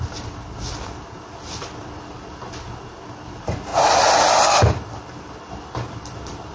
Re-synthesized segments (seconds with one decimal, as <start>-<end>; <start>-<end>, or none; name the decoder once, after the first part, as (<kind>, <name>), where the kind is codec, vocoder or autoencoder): none